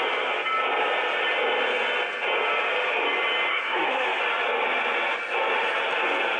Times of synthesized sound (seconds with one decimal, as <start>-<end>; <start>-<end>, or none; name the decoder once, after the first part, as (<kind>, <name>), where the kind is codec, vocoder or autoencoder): 3.5-4.2 (codec, SNAC)